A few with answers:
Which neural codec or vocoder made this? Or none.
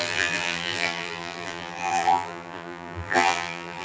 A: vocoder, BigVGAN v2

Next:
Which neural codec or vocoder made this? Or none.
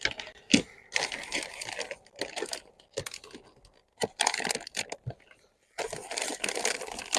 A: none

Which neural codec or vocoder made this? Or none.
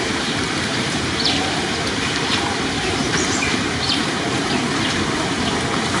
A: vocoder, BigVGAN v2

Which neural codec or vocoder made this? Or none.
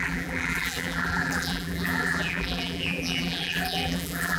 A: vocoder, BigVGAN v2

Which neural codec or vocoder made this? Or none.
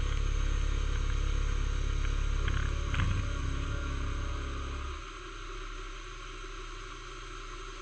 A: none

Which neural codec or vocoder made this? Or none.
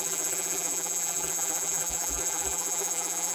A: vocoder, BigVGAN v2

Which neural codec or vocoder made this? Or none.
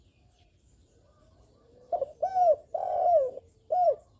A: vocoder, BigVGAN v2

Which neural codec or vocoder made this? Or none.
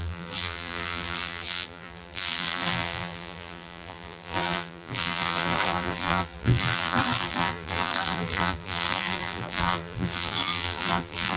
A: vocoder, BigVGAN v2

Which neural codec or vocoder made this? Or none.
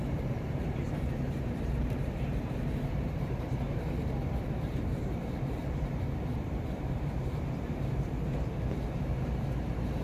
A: vocoder, BigVGAN v2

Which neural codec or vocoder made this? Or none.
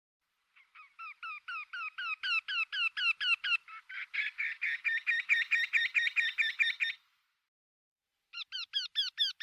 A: none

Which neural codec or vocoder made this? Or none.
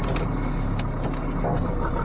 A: none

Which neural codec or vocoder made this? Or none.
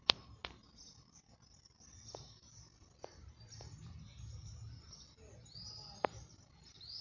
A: none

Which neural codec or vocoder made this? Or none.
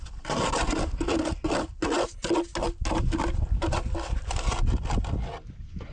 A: none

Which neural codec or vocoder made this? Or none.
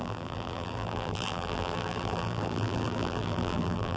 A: vocoder, BigVGAN v2